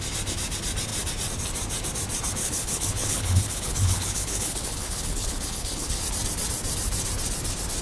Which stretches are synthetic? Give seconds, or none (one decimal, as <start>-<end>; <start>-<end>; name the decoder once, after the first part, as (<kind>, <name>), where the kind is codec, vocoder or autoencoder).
2.4-6.0 (codec, HILCodec)